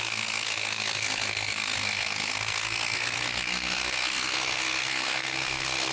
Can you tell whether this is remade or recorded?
remade